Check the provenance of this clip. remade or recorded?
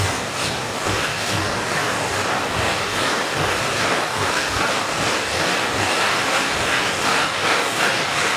remade